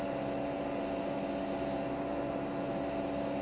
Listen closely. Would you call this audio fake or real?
real